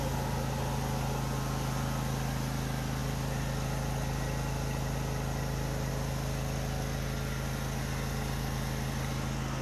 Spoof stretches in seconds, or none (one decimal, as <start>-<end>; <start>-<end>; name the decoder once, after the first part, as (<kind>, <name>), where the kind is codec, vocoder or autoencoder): none